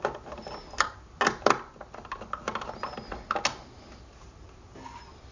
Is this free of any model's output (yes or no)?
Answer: yes